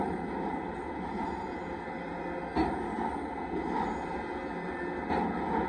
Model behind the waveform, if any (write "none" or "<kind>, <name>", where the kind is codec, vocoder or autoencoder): none